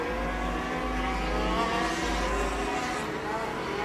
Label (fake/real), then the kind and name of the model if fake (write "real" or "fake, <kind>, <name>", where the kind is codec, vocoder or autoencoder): real